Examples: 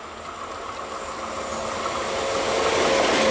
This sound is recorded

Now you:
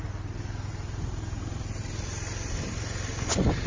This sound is recorded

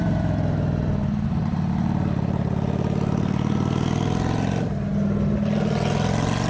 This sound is recorded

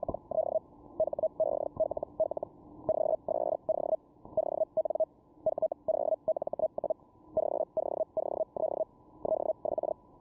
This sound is recorded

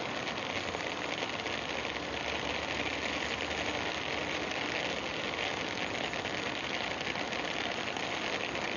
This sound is recorded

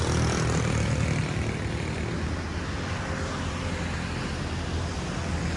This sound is recorded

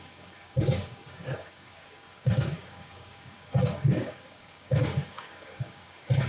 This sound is remade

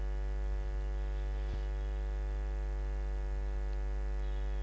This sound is recorded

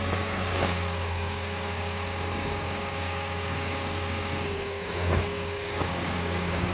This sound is remade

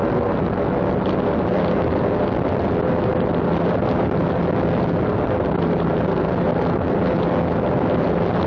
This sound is recorded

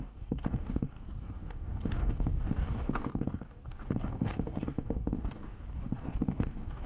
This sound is remade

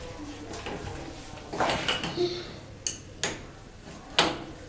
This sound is recorded